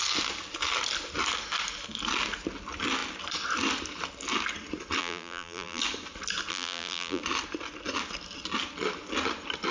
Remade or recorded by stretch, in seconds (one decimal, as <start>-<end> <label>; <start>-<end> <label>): 0.0-5.0 recorded; 5.0-5.8 remade; 5.8-6.5 recorded; 6.5-7.2 remade; 7.2-9.7 recorded